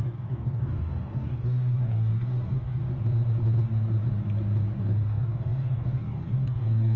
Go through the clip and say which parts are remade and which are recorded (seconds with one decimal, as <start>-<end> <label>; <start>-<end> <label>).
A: 0.0-2.8 remade; 2.8-4.8 recorded; 4.8-7.0 remade